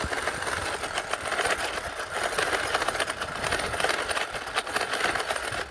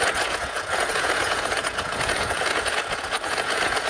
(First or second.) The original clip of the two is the first